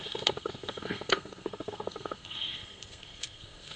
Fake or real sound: fake